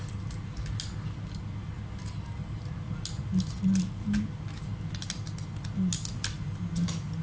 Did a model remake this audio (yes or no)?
no